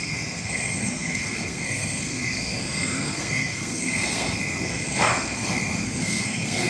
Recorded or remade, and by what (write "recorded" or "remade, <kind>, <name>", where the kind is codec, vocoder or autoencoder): remade, codec, SNAC